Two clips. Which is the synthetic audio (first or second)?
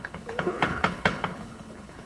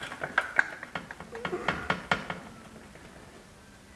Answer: first